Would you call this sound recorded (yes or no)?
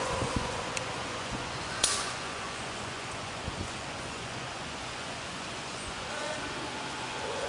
no